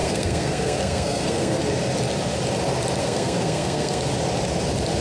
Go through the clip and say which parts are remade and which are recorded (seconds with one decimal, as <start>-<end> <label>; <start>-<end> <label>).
0.0-1.6 remade; 1.6-3.0 recorded; 3.0-4.0 remade; 4.0-5.0 recorded